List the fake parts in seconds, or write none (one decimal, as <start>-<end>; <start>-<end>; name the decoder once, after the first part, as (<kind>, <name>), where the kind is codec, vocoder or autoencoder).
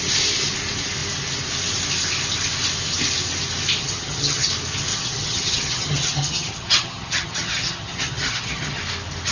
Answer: 3.8-4.5 (vocoder, HiFi-GAN); 4.9-8.8